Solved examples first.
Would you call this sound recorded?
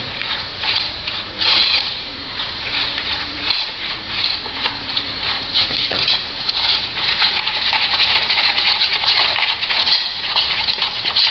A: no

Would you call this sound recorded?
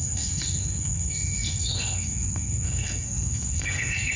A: no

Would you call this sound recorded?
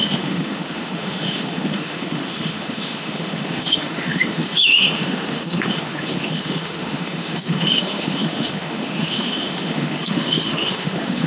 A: no